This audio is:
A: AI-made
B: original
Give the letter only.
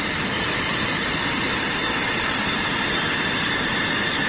A